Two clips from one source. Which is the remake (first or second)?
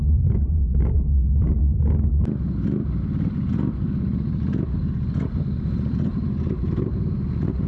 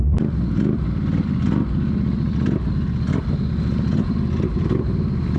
first